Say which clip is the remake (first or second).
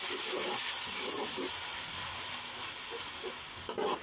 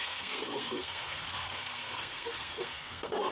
second